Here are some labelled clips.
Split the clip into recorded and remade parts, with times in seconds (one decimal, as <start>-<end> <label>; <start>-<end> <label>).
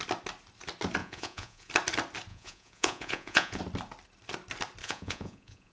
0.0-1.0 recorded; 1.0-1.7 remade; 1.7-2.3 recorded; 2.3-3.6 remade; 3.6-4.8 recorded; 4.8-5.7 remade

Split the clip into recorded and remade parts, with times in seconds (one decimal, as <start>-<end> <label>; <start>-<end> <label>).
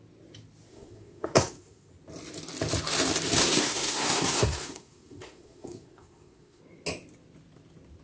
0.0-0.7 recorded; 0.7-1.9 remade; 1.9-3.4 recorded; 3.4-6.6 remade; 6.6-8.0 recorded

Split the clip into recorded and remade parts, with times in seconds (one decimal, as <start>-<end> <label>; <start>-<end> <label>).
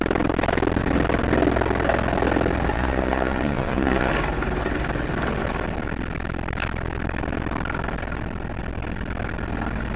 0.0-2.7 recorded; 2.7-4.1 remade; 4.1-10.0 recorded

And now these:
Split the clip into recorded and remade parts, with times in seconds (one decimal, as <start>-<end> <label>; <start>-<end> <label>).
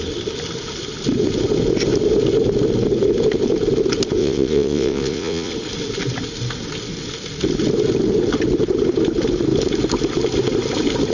0.0-4.2 recorded; 4.2-5.5 remade; 5.5-11.1 recorded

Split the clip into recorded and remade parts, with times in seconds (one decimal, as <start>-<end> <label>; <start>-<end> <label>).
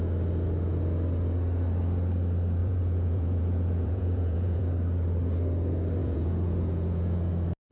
0.0-2.6 recorded; 2.6-4.6 remade; 4.6-6.0 recorded; 6.0-7.3 remade; 7.3-7.7 recorded